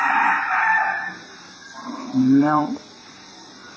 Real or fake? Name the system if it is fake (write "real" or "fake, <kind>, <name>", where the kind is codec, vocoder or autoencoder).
fake, vocoder, BigVGAN v2